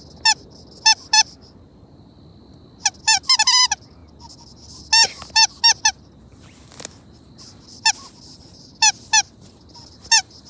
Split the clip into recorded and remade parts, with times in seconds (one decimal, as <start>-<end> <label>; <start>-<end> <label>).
0.0-10.5 recorded